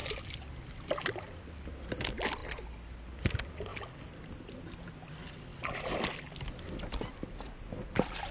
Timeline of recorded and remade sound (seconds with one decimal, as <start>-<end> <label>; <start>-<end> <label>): 0.0-8.3 recorded